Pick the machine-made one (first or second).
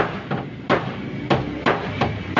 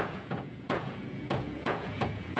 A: second